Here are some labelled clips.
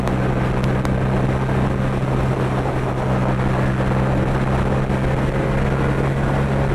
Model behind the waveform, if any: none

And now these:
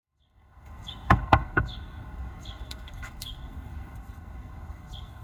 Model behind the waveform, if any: codec, SNAC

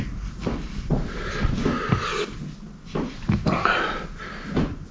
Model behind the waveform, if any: none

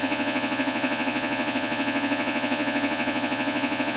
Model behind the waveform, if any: vocoder, Vocos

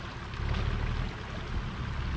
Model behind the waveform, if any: none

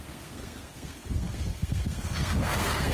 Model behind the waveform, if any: codec, SNAC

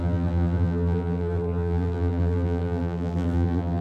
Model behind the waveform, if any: vocoder, BigVGAN v2